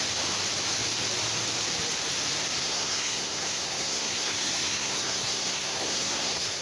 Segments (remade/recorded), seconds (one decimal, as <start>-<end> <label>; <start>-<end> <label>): 0.0-2.6 recorded; 2.6-6.6 remade